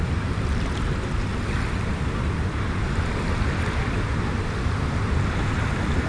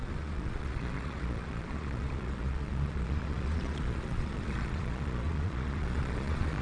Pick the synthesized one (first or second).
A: second